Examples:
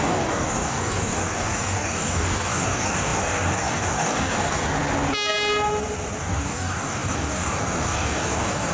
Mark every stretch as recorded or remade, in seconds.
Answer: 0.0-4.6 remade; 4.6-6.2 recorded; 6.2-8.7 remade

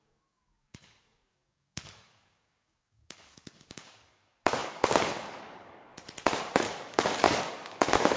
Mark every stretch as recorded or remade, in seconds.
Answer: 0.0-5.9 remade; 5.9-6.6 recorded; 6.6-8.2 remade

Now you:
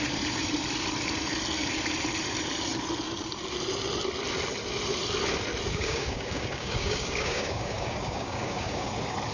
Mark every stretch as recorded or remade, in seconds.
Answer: 0.0-5.7 recorded; 5.7-8.9 remade; 8.9-9.3 recorded